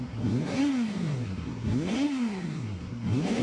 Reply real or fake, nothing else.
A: fake